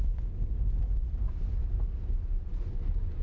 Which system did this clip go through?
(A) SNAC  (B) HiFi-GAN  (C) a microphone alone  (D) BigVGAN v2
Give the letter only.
C